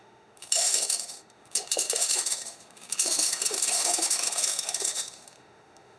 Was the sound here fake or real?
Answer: fake